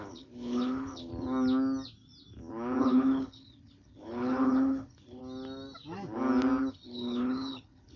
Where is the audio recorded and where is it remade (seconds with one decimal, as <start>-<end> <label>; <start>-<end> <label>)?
0.0-1.1 remade; 1.1-2.8 recorded; 2.8-5.2 remade; 5.2-6.7 recorded; 6.7-8.0 remade